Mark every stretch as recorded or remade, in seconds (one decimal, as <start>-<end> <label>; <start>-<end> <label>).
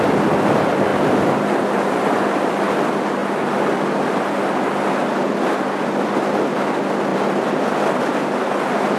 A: 0.0-7.1 recorded; 7.1-8.0 remade; 8.0-9.0 recorded